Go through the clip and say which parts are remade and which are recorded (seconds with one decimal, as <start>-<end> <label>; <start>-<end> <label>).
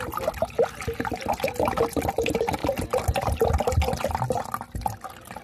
0.0-5.4 recorded